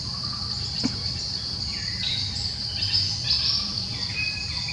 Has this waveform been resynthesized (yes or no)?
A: no